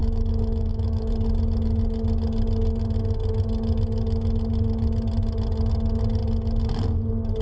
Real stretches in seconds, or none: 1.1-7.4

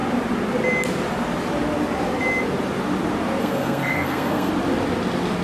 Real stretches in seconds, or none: 0.0-3.4; 4.5-5.4

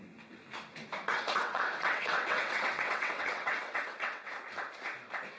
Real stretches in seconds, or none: 0.0-1.1; 4.3-5.4

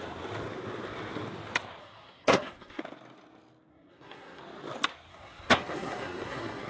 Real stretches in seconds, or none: 0.0-1.8; 2.8-3.7; 4.4-5.1

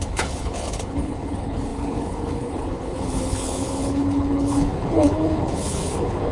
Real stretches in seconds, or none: none

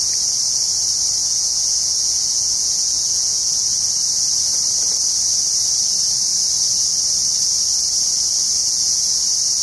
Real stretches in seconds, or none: 0.0-1.2; 3.6-8.6; 9.2-9.6

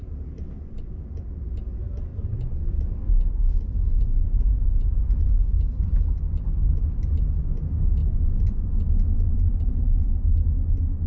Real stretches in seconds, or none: 0.8-2.1; 6.2-8.0; 10.0-11.1

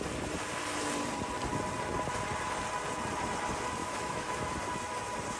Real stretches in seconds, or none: 0.0-3.8; 4.5-5.4